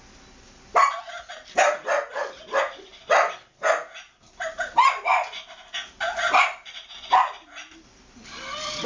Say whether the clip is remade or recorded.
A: recorded